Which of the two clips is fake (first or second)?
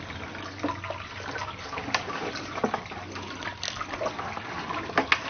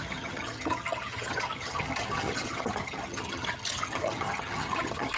second